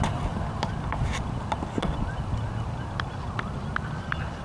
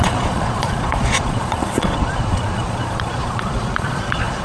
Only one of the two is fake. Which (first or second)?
second